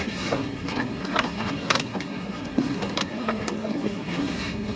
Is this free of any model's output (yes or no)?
no